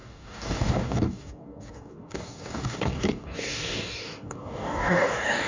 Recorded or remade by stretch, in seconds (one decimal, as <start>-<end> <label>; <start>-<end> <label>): 0.0-5.5 remade